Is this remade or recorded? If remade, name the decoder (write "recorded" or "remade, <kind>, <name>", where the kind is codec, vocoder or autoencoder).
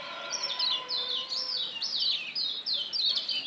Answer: recorded